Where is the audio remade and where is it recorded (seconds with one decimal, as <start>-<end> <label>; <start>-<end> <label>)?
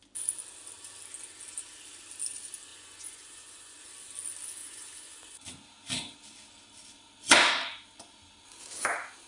0.0-2.7 recorded; 2.7-3.8 remade; 3.8-4.6 recorded; 4.6-5.4 remade; 5.4-9.3 recorded